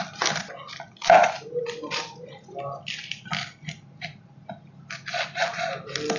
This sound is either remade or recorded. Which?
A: recorded